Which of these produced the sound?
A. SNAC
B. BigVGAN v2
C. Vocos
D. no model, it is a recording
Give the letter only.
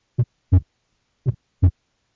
D